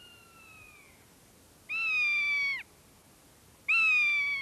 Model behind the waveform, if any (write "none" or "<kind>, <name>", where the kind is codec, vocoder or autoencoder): none